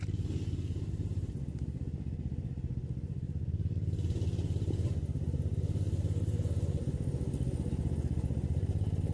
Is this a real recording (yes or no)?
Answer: yes